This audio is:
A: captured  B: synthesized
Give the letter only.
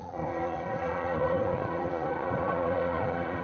B